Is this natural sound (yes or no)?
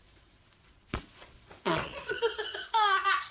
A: no